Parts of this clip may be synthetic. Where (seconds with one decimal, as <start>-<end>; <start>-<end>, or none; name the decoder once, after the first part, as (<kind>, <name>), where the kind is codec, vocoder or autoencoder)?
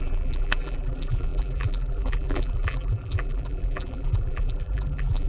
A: 0.0-5.3 (vocoder, BigVGAN v2)